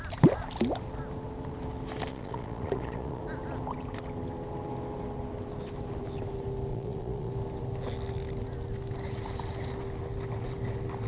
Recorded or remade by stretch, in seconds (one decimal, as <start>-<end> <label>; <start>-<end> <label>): 0.0-2.1 recorded; 2.1-3.2 remade; 3.2-6.7 recorded; 6.7-7.3 remade; 7.3-11.1 recorded